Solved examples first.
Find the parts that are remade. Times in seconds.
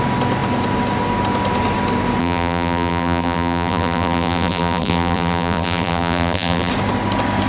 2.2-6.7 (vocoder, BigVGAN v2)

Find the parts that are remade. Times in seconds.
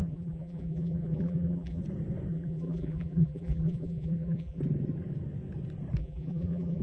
0.0-1.8 (vocoder, BigVGAN v2); 2.3-4.6; 6.0-6.8